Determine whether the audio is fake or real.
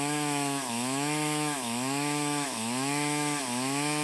fake